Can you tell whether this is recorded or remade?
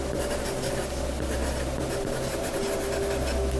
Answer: recorded